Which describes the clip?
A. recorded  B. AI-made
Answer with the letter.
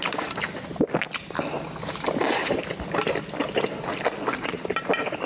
A